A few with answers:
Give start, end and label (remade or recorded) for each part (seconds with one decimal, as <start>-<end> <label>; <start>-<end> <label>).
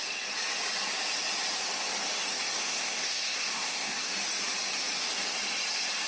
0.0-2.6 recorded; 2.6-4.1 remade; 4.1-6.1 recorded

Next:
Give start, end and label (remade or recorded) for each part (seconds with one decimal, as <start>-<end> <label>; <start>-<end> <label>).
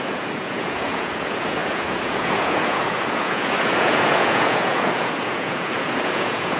0.0-6.6 remade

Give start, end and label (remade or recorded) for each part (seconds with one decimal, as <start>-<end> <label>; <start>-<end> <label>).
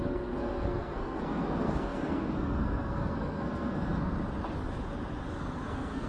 0.0-4.1 remade; 4.1-5.4 recorded; 5.4-6.1 remade